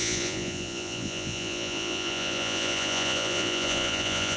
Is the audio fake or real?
fake